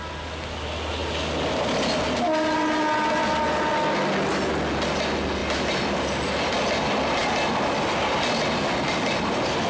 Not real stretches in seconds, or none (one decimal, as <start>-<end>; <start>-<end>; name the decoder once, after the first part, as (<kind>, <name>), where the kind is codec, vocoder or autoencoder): none